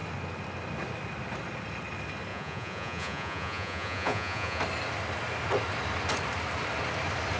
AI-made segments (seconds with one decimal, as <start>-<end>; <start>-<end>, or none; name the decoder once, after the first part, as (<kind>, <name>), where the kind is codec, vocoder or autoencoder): 2.3-4.6 (vocoder, Vocos)